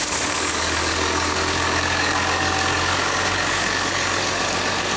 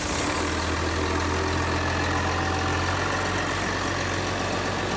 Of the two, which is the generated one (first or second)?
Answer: first